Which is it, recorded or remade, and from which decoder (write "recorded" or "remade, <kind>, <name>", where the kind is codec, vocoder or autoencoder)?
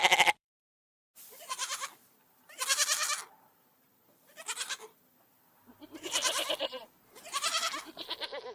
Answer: remade, vocoder, BigVGAN v2